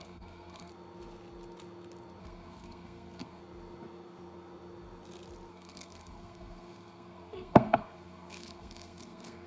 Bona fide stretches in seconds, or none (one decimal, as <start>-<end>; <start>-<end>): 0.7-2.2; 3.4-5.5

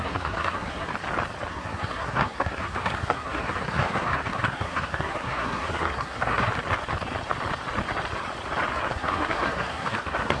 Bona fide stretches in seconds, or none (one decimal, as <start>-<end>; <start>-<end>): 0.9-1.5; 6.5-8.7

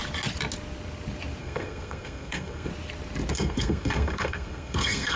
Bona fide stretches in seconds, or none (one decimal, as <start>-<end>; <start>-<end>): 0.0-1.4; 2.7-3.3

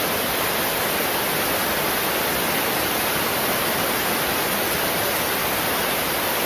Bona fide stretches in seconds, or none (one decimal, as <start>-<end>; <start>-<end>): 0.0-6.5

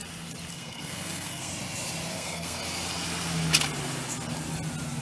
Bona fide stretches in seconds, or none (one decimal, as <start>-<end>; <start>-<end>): 0.0-0.5; 1.5-2.1; 2.6-5.0

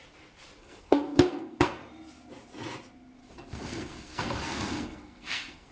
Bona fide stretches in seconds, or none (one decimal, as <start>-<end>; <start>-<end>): 0.0-0.6; 1.8-3.2